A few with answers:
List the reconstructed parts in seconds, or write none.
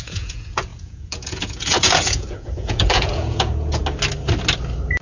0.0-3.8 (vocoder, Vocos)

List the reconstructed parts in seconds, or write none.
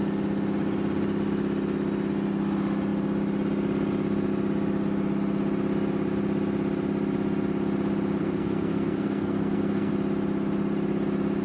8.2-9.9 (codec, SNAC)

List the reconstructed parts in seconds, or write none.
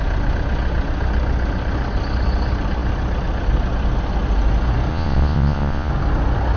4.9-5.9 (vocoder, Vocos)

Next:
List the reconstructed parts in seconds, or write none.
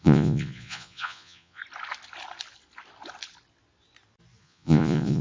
0.0-1.6 (vocoder, Vocos); 4.4-5.2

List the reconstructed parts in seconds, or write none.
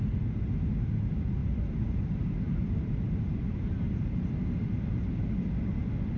1.4-5.1 (vocoder, BigVGAN v2)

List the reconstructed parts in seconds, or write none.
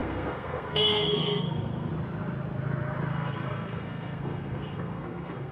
0.0-1.9 (codec, SNAC); 3.1-5.5